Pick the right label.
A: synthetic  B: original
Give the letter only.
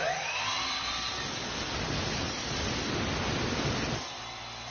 B